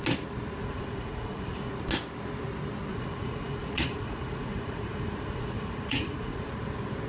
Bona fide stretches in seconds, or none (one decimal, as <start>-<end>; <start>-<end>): 0.0-0.6; 1.7-2.9; 6.5-7.1